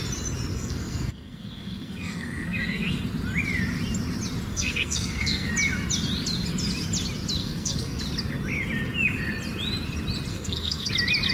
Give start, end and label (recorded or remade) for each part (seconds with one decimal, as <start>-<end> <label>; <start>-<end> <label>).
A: 0.0-0.5 recorded; 0.5-3.0 remade; 3.0-4.5 recorded; 4.5-5.5 remade; 5.5-7.4 recorded; 7.4-8.0 remade; 8.0-10.3 recorded; 10.3-10.9 remade; 10.9-11.3 recorded